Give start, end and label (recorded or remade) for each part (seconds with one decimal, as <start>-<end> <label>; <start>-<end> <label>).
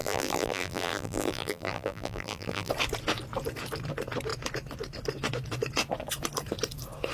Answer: 0.0-2.7 remade; 2.7-7.1 recorded